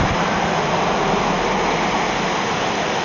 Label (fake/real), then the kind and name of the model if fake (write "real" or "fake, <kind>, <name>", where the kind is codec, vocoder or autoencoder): real